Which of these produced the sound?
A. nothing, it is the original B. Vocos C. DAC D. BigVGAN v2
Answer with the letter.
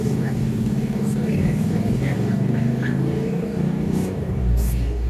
C